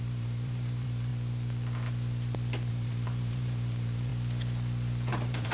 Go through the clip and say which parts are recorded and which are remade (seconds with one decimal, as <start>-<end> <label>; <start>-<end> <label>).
0.0-1.1 remade; 1.1-2.7 recorded; 2.7-4.1 remade; 4.1-5.1 recorded; 5.1-5.5 remade

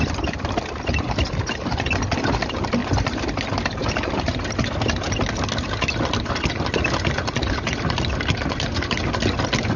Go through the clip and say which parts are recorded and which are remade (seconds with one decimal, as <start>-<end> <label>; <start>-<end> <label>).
0.0-9.8 recorded

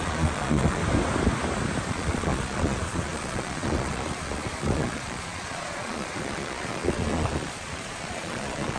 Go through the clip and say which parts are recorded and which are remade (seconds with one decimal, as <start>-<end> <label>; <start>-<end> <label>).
0.0-0.8 remade; 0.8-1.9 recorded; 1.9-8.8 remade

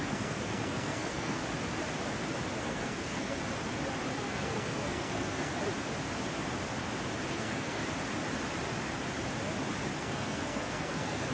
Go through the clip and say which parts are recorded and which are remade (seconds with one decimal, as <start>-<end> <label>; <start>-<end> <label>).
0.0-1.4 remade; 1.4-2.6 recorded; 2.6-3.4 remade; 3.4-4.1 recorded; 4.1-5.5 remade; 5.5-7.3 recorded; 7.3-7.8 remade; 7.8-10.0 recorded; 10.0-11.3 remade

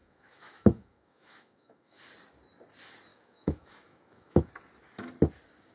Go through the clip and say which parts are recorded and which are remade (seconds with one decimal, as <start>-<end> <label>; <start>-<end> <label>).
0.0-2.0 remade; 2.0-3.1 recorded; 3.1-4.5 remade; 4.5-5.7 recorded

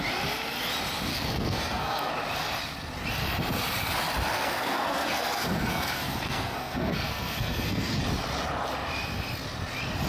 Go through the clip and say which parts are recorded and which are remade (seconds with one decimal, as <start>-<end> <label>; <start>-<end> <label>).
0.0-1.1 recorded; 1.1-2.1 remade; 2.1-4.3 recorded; 4.3-8.0 remade; 8.0-10.1 recorded

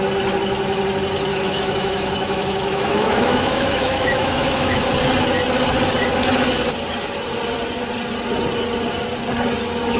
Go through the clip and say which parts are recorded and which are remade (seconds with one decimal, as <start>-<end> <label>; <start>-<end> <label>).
0.0-1.3 recorded; 1.3-4.9 remade; 4.9-10.0 recorded

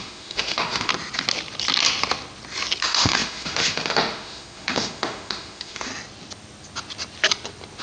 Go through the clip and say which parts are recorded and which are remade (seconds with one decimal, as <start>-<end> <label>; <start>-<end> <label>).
0.0-0.9 remade; 0.9-2.8 recorded; 2.8-5.9 remade; 5.9-7.8 recorded